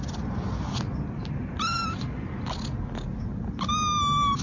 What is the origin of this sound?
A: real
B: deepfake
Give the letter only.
A